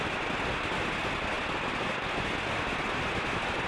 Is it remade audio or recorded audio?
recorded